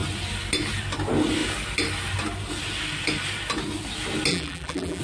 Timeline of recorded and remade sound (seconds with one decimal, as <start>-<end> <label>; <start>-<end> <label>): 0.0-4.3 recorded; 4.3-5.0 remade

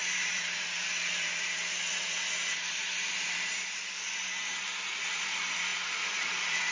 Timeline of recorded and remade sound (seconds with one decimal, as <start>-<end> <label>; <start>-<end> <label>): 0.0-3.5 remade; 3.5-4.9 recorded; 4.9-6.7 remade

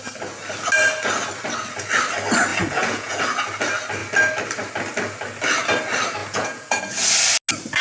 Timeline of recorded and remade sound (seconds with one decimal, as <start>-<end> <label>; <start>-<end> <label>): 0.0-2.5 recorded; 2.5-3.2 remade; 3.2-6.2 recorded; 6.2-6.8 remade; 6.8-7.8 recorded

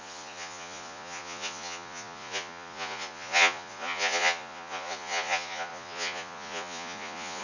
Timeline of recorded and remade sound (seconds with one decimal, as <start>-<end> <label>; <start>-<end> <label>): 0.0-7.4 remade

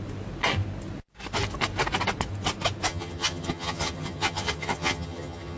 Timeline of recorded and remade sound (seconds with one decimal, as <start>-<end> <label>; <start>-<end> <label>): 0.0-2.9 recorded; 2.9-5.6 remade

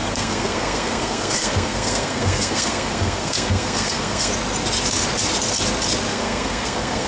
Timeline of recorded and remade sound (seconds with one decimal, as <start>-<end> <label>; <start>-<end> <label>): 0.0-4.3 remade; 4.3-6.1 recorded; 6.1-7.1 remade